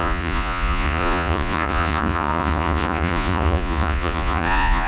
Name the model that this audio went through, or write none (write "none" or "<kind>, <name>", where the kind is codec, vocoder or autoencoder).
vocoder, Vocos